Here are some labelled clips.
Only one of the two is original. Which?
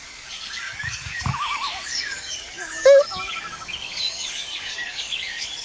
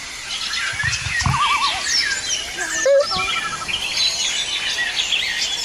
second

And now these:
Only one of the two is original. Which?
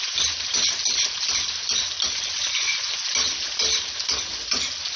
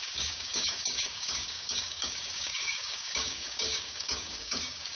first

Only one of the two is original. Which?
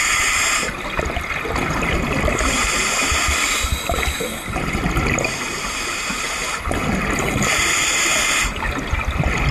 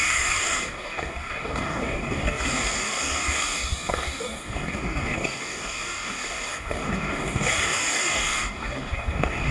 first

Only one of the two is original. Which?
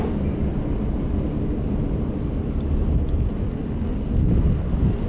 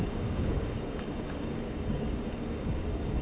first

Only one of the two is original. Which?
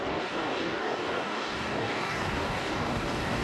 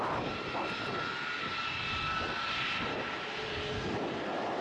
second